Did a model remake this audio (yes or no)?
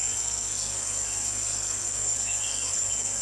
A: yes